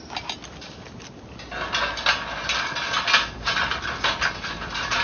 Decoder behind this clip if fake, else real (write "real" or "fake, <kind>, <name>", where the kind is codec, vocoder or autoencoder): real